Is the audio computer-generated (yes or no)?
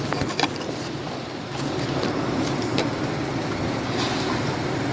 yes